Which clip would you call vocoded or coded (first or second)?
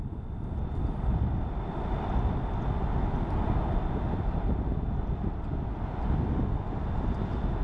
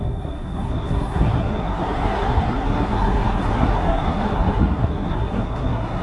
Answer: second